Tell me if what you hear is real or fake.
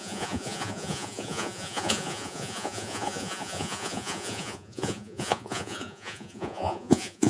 fake